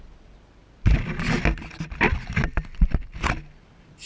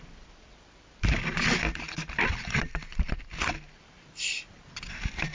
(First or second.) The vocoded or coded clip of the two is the second